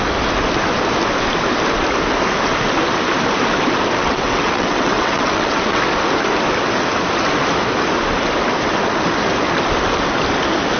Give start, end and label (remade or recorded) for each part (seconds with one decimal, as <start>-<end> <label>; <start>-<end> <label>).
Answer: 0.0-4.0 recorded; 4.0-5.8 remade; 5.8-10.8 recorded